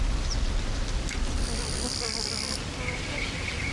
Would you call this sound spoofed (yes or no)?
no